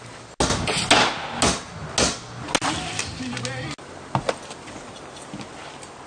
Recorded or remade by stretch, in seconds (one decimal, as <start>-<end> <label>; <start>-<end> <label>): 0.0-6.1 recorded